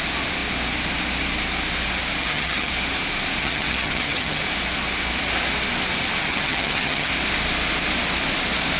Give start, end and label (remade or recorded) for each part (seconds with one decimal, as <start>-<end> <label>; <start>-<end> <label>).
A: 0.0-2.2 recorded; 2.2-2.7 remade; 2.7-3.4 recorded; 3.4-4.4 remade; 4.4-6.3 recorded; 6.3-7.1 remade; 7.1-8.8 recorded